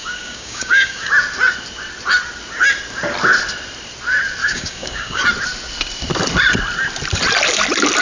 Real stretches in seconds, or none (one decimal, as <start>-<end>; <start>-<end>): 1.1-4.4; 5.2-8.0